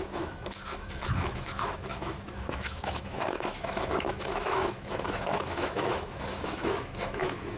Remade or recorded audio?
remade